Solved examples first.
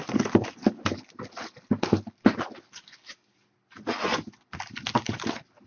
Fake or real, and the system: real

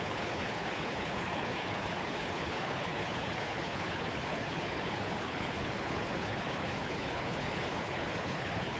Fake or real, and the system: fake, codec, HILCodec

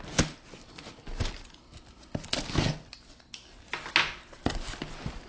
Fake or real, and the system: real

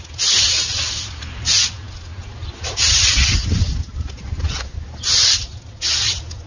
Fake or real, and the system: real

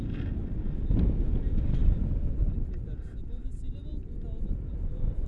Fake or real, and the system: real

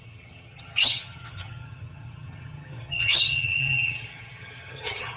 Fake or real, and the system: fake, vocoder, HiFi-GAN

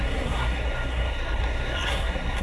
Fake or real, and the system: fake, codec, SNAC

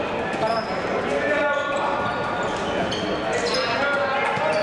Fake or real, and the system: real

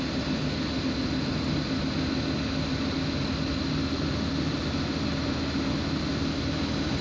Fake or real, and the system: real